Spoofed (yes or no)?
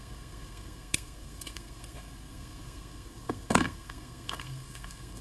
yes